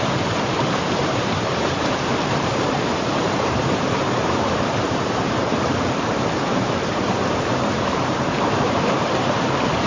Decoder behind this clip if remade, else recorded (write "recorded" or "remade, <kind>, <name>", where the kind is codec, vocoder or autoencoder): remade, vocoder, BigVGAN v2